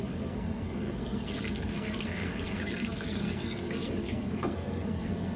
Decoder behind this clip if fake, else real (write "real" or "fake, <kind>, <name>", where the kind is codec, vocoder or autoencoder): fake, codec, SNAC